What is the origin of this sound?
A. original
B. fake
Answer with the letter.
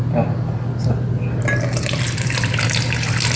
A